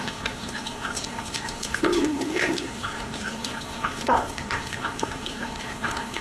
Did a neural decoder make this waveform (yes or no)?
yes